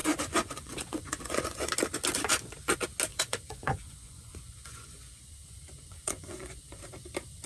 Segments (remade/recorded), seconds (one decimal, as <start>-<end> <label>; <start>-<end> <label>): 0.0-1.7 remade; 1.7-3.1 recorded; 3.1-6.8 remade; 6.8-7.5 recorded